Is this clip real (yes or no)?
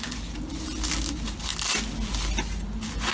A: yes